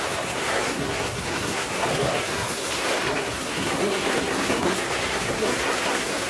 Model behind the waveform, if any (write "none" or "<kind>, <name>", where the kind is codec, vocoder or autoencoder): codec, SNAC